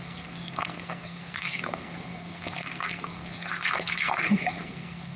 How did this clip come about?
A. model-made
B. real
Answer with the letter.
A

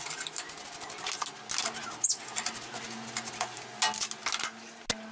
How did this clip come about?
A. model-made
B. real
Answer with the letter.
B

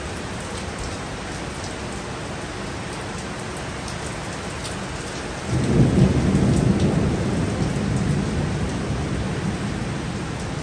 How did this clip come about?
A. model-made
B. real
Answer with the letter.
B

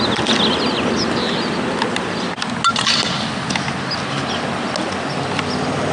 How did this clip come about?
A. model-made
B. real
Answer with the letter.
B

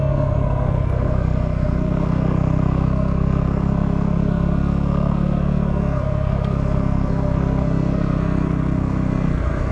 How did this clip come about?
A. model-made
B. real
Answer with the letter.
A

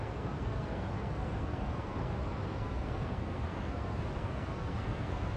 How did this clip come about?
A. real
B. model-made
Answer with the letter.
B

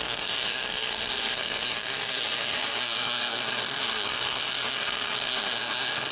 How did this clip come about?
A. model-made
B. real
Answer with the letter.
A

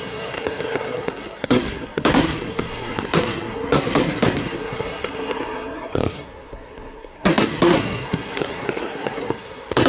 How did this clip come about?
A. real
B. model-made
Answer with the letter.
B